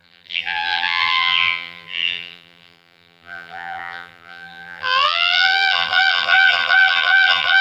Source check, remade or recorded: remade